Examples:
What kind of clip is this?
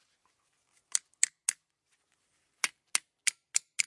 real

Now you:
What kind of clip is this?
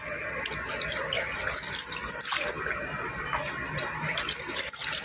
real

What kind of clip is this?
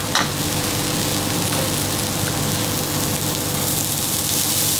real